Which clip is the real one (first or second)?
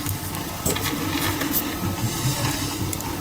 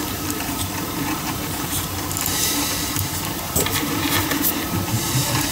first